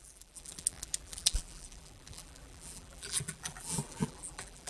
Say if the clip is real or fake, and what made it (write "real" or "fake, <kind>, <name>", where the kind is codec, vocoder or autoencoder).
fake, vocoder, BigVGAN v2